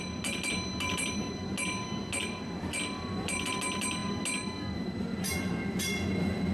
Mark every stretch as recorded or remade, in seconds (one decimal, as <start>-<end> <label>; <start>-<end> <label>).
0.0-6.5 recorded